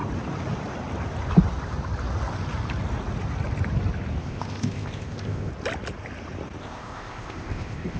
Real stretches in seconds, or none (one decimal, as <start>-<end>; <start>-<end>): 0.0-4.2; 5.5-6.6